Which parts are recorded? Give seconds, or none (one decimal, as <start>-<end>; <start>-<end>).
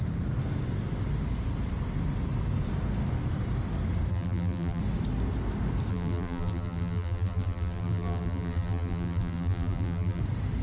0.0-4.1; 4.8-5.9; 10.2-10.6